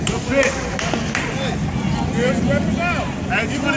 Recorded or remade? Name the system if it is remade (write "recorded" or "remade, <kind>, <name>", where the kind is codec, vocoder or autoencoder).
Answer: recorded